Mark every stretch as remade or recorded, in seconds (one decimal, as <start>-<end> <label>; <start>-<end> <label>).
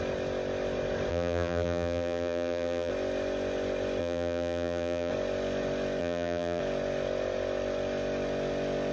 0.0-1.1 recorded; 1.1-2.9 remade; 2.9-4.0 recorded; 4.0-5.1 remade; 5.1-6.0 recorded; 6.0-6.6 remade; 6.6-8.9 recorded